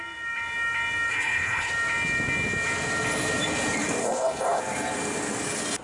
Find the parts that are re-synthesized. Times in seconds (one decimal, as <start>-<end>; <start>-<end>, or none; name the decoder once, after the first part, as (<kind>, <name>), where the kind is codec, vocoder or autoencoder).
1.1-1.7 (codec, HILCodec); 4.0-4.6